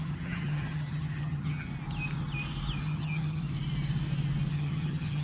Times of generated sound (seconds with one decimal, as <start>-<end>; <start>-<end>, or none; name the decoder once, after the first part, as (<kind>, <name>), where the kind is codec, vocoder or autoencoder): 0.0-1.7 (vocoder, HiFi-GAN); 2.8-3.4; 4.5-5.2